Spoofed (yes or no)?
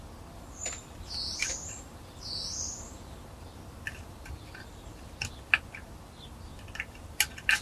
no